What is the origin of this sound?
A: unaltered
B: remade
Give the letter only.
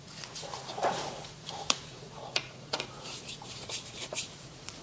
B